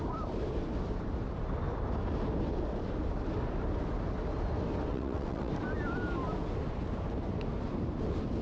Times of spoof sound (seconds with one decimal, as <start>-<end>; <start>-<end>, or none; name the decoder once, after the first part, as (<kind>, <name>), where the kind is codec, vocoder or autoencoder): 4.9-5.5 (vocoder, WaveNeXt)

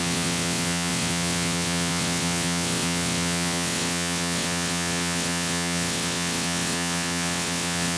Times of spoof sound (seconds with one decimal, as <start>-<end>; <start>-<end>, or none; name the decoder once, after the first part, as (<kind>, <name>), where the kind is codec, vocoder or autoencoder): 0.0-8.0 (vocoder, WaveNeXt)

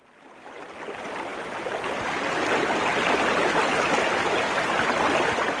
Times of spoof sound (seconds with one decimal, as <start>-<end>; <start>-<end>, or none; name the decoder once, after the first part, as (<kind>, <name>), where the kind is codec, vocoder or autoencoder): none

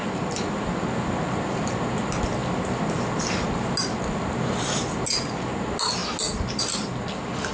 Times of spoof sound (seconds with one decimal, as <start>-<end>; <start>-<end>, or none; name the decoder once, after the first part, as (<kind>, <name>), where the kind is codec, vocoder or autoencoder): none

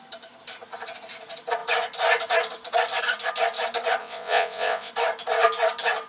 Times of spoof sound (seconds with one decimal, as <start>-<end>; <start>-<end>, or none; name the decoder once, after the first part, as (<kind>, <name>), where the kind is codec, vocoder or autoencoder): 4.0-4.9 (vocoder, WaveNeXt)

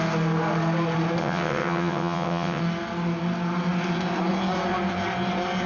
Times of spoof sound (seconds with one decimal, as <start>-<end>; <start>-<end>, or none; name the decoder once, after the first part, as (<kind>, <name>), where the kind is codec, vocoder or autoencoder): 1.2-2.6 (vocoder, WaveNeXt)

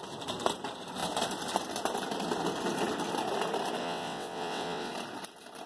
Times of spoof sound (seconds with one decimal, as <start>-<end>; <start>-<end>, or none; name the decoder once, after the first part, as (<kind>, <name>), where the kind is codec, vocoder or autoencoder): 3.8-4.9 (vocoder, WaveNeXt)

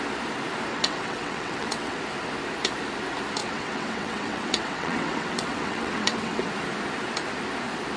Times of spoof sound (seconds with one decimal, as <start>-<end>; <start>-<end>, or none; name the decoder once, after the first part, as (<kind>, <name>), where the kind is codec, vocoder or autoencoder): 0.7-2.0 (vocoder, WaveNeXt); 3.4-6.5